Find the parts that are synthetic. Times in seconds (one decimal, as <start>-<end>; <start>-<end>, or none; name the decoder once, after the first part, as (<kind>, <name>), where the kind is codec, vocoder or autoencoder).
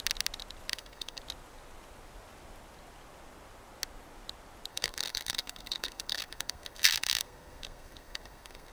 0.7-1.2 (codec, SNAC); 4.7-8.7